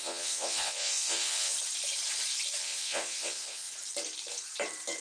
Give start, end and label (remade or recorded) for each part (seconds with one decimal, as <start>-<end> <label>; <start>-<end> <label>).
0.0-1.5 remade; 1.5-2.6 recorded; 2.6-3.7 remade; 3.7-5.0 recorded